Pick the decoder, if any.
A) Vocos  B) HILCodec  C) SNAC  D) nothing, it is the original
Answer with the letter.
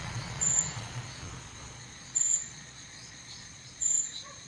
A